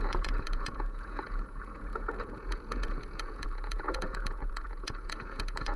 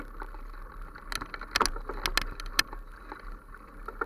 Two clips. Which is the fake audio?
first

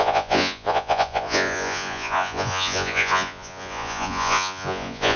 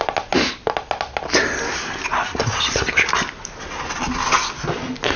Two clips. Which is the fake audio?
first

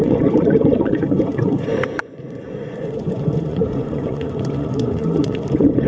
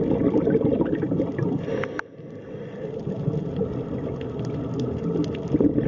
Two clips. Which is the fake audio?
first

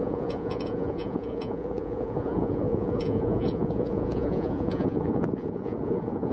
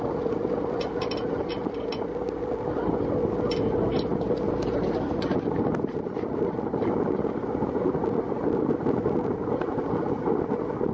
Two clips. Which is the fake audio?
first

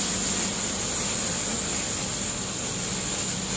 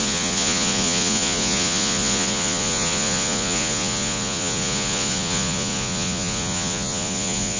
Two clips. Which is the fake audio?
second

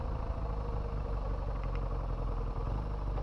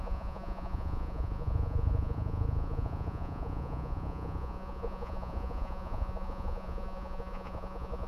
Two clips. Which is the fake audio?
second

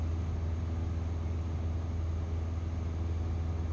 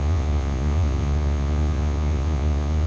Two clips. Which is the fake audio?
second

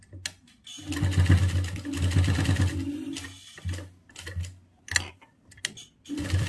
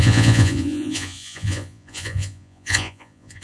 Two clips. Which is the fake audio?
second